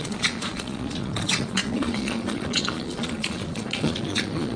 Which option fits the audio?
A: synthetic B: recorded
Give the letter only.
A